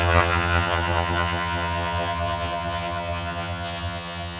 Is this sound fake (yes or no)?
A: yes